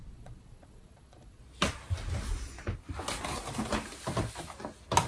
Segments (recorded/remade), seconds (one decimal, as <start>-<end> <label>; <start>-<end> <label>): 0.0-1.4 remade; 1.4-5.1 recorded